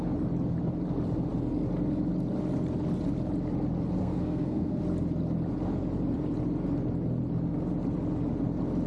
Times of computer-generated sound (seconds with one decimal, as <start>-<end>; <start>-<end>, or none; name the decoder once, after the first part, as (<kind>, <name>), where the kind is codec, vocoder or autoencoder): 4.0-4.8 (codec, SNAC)